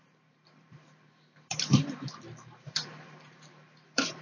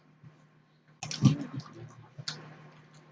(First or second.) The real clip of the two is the second